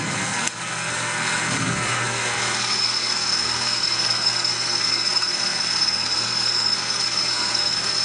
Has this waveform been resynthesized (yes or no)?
yes